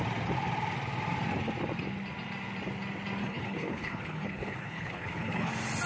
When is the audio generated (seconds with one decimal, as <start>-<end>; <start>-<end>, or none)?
3.2-5.5